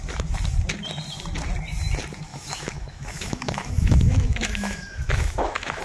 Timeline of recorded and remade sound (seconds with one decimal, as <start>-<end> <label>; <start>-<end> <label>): 0.0-2.3 recorded; 2.3-5.8 remade